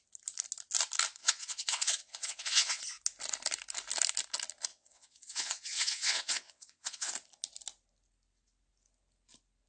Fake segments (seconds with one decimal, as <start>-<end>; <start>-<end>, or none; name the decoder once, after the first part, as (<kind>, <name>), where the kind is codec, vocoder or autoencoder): 1.2-2.8 (vocoder, WaveNeXt); 4.7-7.1